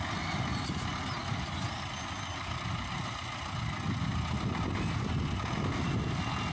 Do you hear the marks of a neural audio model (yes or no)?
no